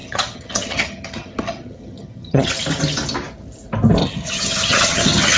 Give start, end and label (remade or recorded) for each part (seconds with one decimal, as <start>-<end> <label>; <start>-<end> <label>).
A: 0.0-2.5 remade; 2.5-4.0 recorded; 4.0-5.4 remade